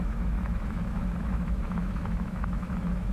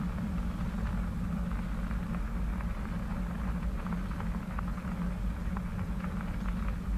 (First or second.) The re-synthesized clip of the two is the first